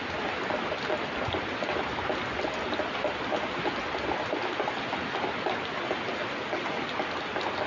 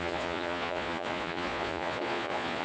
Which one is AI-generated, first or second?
second